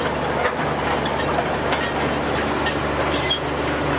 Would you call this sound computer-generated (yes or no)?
no